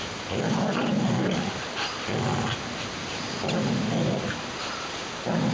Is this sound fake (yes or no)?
no